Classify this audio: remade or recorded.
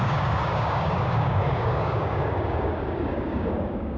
remade